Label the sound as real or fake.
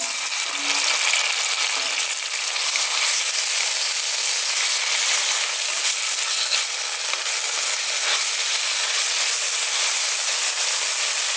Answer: real